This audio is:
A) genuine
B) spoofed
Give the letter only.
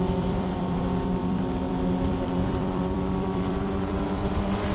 B